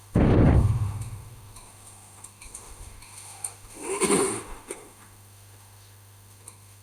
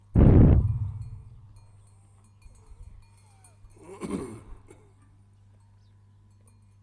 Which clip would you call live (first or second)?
second